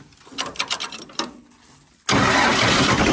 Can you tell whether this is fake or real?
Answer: real